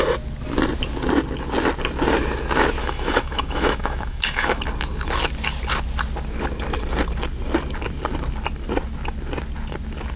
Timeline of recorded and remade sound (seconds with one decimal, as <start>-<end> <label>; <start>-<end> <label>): 0.0-2.8 recorded; 2.8-4.6 remade; 4.6-10.2 recorded